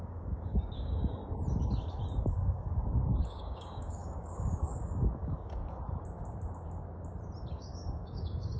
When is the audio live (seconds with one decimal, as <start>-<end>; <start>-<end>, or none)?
1.2-2.2; 5.6-7.5